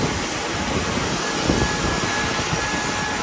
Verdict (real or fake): real